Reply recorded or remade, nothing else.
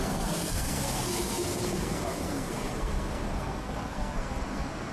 remade